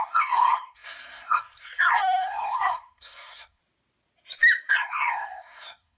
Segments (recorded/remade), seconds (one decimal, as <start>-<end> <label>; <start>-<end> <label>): 0.0-3.6 remade; 3.6-4.7 recorded; 4.7-6.0 remade